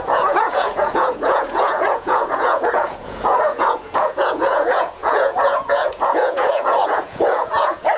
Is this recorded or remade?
remade